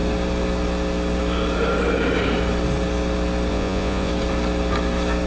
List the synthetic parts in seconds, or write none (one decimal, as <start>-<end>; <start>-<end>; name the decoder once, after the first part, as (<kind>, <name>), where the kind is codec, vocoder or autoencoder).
3.5-4.1 (vocoder, Vocos)